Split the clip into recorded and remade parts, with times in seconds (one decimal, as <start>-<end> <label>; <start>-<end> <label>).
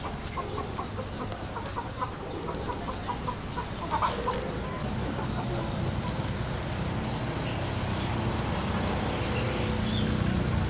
0.0-10.7 recorded